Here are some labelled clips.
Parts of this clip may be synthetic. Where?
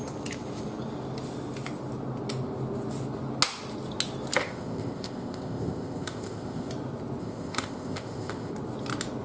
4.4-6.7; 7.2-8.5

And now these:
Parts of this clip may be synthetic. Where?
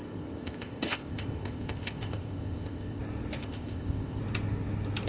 0.0-3.0; 3.4-4.2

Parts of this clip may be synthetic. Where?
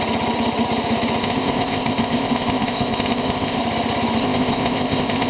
1.2-3.6; 4.2-5.3